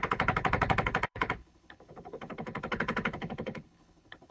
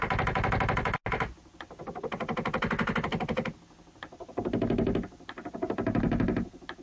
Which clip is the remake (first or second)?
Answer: first